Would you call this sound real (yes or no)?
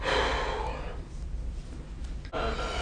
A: yes